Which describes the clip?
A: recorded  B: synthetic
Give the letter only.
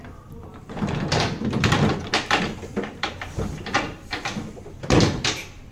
B